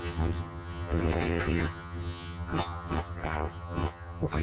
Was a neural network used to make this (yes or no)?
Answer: yes